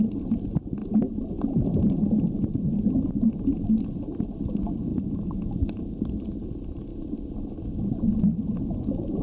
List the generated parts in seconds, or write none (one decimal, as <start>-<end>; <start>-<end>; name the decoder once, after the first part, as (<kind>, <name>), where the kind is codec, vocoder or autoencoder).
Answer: 4.9-6.1 (autoencoder, DAC-VAE)